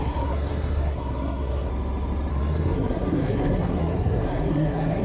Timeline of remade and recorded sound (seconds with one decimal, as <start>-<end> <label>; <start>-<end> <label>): 0.0-1.7 remade; 1.7-2.3 recorded; 2.3-5.0 remade